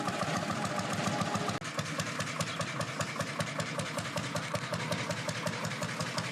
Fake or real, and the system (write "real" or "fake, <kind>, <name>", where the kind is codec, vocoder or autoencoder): real